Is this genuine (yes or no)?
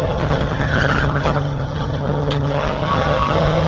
no